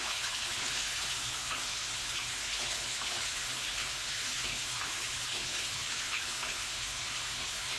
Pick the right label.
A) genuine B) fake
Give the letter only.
B